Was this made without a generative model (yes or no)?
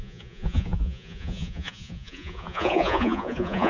no